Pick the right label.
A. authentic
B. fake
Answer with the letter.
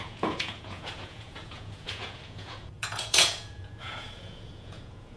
B